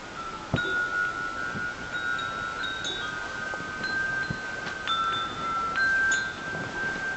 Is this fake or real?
real